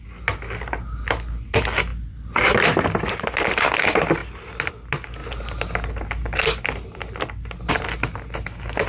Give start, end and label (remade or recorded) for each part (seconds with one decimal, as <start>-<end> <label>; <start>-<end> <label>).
0.0-1.9 recorded; 1.9-3.0 remade; 3.0-4.2 recorded; 4.2-4.7 remade; 4.7-8.9 recorded